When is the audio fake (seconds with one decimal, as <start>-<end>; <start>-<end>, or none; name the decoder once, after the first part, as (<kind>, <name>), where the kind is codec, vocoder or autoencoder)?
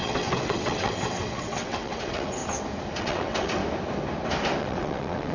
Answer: 0.0-2.4 (vocoder, WaveNeXt); 3.0-3.6; 4.6-5.3